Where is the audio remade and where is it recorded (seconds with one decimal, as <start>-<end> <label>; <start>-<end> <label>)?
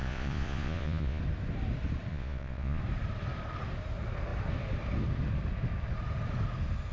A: 0.0-1.2 remade; 1.2-2.1 recorded; 2.1-2.8 remade; 2.8-6.9 recorded